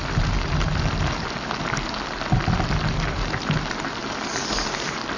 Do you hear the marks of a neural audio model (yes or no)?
no